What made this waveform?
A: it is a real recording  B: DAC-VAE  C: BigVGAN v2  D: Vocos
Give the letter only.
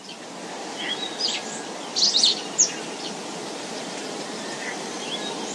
A